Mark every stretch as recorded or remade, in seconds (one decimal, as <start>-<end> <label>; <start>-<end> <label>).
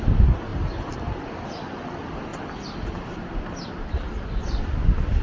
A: 0.0-0.5 recorded; 0.5-1.2 remade; 1.2-5.2 recorded